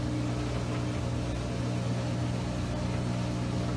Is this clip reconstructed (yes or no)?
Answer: no